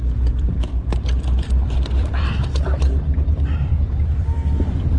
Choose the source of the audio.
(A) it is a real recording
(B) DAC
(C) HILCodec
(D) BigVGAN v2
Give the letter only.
D